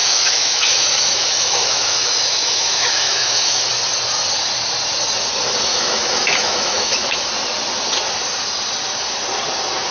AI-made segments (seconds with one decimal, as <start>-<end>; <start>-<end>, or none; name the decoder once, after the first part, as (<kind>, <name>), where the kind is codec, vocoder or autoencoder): 0.0-3.7 (autoencoder, DAC-VAE); 5.7-7.3